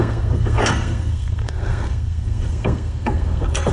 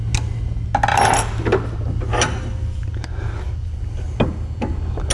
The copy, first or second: first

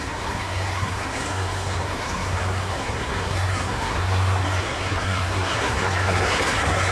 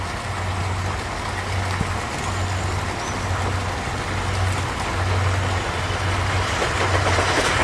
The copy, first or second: first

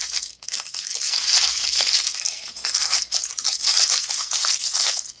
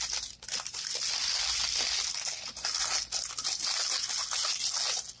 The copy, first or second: first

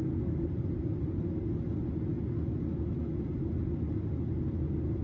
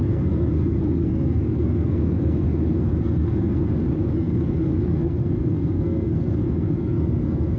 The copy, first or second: second